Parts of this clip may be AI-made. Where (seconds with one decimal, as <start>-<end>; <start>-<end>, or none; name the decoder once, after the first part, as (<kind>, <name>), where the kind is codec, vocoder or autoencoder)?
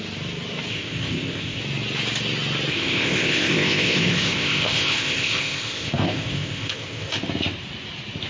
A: 0.7-1.6 (codec, ZipCodec); 2.7-7.2